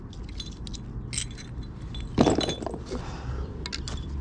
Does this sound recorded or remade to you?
recorded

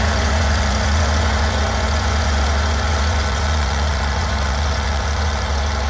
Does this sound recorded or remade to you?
remade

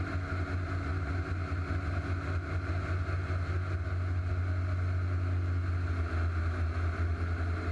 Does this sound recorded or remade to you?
recorded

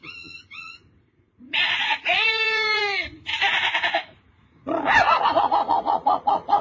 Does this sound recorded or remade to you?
remade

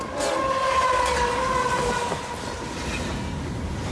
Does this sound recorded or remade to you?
recorded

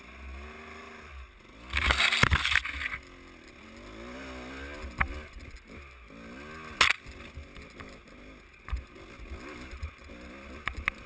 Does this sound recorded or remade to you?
recorded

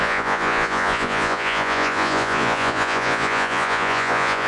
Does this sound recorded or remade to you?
remade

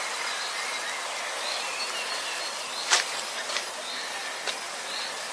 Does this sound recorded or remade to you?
recorded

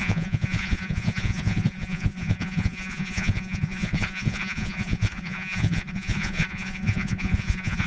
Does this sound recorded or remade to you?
remade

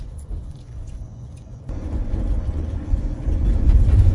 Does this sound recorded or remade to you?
remade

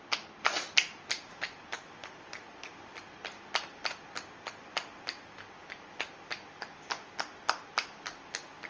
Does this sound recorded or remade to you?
recorded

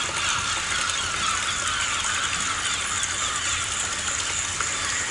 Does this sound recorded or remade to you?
recorded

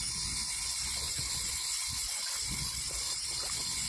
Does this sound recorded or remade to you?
remade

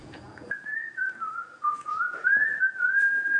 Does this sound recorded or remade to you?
remade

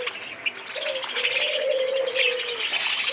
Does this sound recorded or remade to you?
recorded